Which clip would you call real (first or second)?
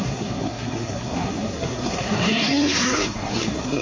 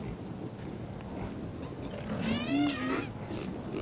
second